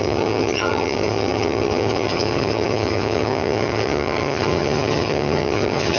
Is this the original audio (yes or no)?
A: no